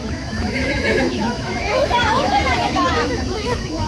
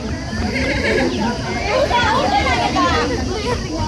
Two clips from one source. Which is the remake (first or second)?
first